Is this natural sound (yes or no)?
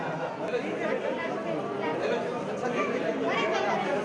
yes